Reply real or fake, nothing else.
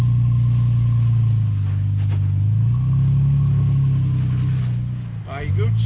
real